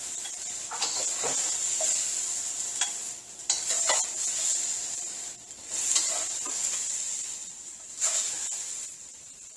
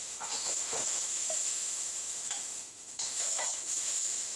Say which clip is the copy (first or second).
second